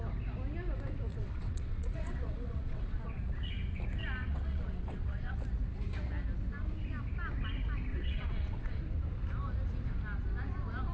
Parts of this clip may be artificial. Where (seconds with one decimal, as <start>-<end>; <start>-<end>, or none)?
1.1-3.2; 4.2-5.4; 7.9-8.8